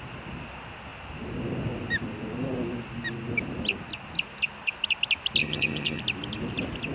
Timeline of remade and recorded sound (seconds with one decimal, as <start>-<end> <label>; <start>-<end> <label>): 0.0-5.4 recorded; 5.4-6.0 remade; 6.0-6.9 recorded